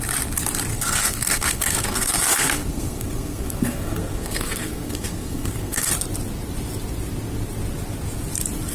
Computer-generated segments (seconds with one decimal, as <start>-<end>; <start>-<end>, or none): 0.7-5.9